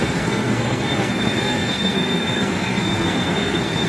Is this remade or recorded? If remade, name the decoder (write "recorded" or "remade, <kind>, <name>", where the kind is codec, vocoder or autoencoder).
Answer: remade, codec, SNAC